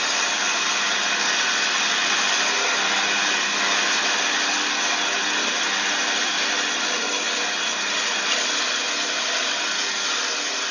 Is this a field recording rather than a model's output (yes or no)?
yes